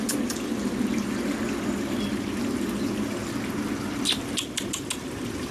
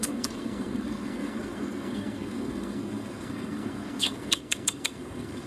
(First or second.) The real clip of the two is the first